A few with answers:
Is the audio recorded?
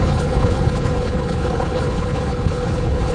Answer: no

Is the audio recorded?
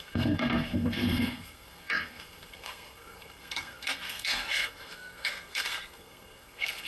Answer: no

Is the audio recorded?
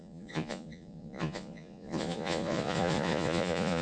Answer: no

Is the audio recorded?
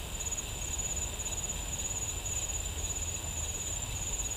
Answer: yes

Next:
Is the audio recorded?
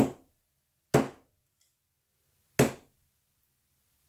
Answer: yes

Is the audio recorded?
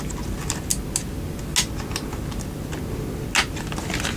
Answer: yes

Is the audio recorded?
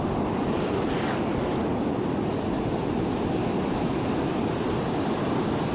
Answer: yes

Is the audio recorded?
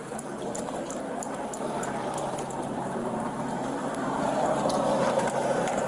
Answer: no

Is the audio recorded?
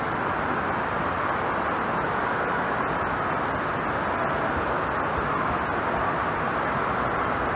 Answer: yes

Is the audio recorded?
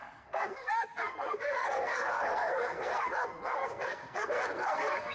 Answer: no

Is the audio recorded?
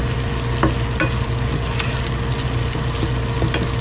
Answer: yes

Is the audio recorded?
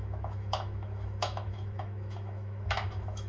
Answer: no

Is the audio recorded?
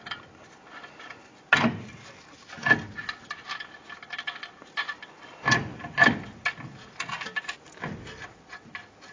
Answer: yes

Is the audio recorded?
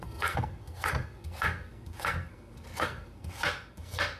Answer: no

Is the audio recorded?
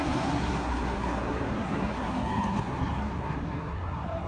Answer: no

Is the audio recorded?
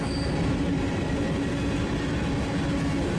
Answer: yes